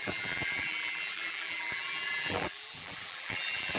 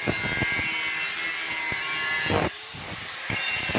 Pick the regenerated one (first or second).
first